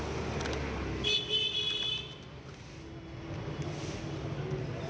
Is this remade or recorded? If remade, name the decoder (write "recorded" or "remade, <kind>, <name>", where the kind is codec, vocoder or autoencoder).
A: recorded